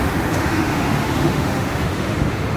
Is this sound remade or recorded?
remade